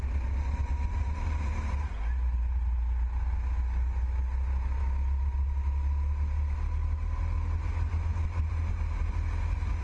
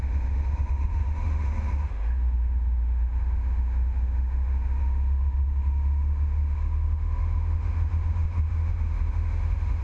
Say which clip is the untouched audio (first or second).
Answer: first